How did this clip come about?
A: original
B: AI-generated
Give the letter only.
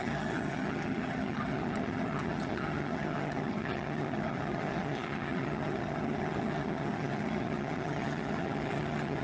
B